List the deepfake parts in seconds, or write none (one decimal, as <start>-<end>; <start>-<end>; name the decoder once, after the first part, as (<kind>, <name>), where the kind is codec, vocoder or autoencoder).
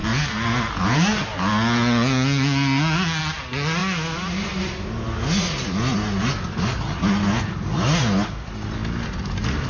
none